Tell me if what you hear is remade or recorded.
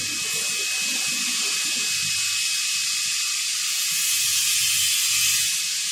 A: recorded